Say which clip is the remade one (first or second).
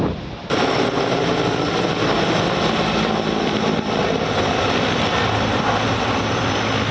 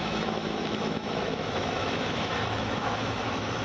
second